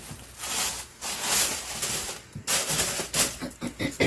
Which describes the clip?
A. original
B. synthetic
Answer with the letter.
A